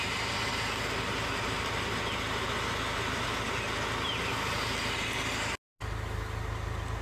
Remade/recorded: recorded